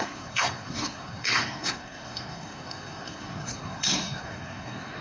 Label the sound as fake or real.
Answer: fake